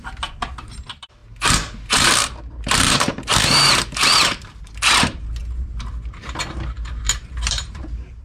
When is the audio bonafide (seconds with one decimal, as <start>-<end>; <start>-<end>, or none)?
1.2-1.9; 4.5-5.0; 5.4-6.5